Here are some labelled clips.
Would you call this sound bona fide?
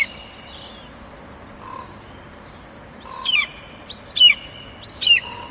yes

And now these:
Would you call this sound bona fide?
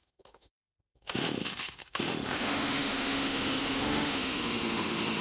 no